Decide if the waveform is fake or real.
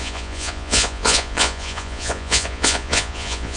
fake